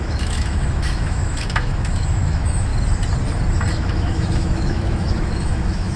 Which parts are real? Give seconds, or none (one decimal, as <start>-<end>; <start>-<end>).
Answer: 2.7-3.7